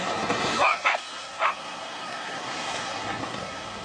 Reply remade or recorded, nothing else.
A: remade